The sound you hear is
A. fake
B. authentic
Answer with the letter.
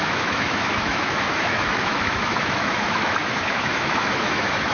A